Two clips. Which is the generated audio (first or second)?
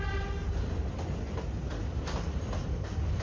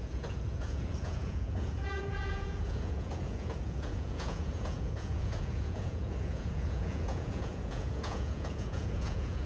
second